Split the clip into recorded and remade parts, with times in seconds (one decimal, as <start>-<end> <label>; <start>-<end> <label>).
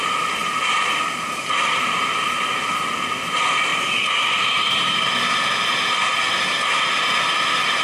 0.0-0.4 remade; 0.4-1.5 recorded; 1.5-3.7 remade; 3.7-6.8 recorded; 6.8-7.8 remade